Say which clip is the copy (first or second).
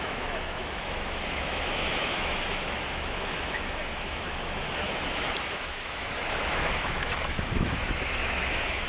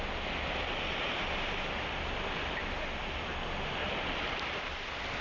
first